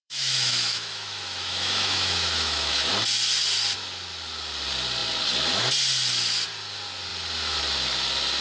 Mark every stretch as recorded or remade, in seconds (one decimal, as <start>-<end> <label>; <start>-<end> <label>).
0.0-2.9 remade; 2.9-8.4 recorded